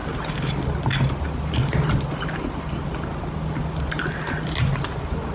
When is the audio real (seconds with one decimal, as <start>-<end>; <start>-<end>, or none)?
0.0-5.3